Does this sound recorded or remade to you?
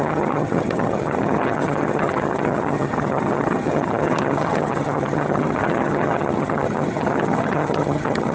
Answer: remade